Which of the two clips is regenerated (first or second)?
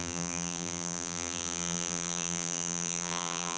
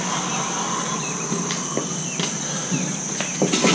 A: first